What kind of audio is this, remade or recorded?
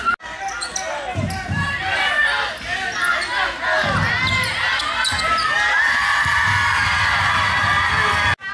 recorded